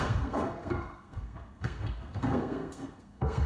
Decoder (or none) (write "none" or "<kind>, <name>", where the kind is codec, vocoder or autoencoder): codec, SNAC